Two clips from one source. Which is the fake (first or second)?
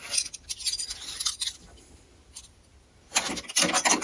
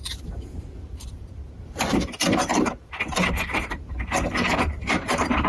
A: second